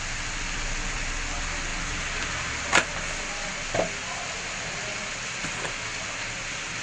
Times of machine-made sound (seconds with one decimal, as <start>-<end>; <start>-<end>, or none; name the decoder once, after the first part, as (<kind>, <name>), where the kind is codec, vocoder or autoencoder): none